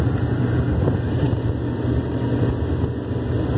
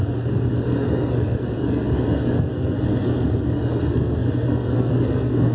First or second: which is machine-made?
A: second